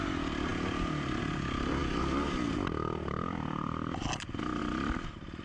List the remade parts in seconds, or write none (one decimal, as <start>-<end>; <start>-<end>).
none